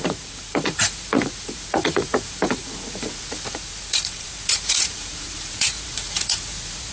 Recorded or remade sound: remade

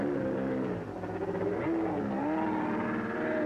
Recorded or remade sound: recorded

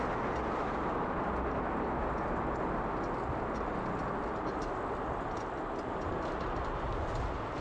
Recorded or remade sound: recorded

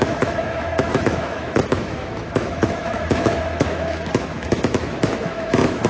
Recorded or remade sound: remade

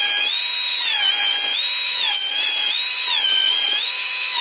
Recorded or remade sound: remade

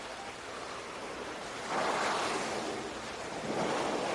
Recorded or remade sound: recorded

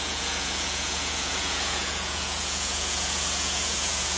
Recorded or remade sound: remade